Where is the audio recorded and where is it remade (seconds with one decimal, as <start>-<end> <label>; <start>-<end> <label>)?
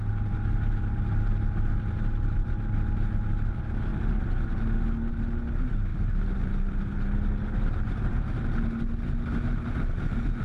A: 0.0-10.4 recorded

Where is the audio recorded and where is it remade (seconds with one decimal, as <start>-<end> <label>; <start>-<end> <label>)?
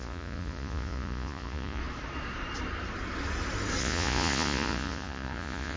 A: 0.0-1.8 remade; 1.8-3.8 recorded; 3.8-5.8 remade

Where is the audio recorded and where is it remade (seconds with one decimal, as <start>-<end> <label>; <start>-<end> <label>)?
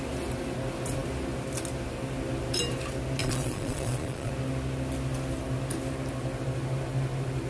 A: 0.0-3.2 recorded; 3.2-4.3 remade; 4.3-7.5 recorded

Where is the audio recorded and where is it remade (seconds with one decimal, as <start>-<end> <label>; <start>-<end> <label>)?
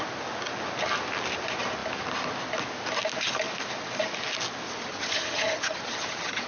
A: 0.0-4.9 recorded; 4.9-6.5 remade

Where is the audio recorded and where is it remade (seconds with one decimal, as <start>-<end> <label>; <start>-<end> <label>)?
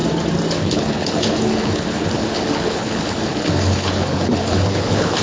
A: 0.0-0.5 recorded; 0.5-5.2 remade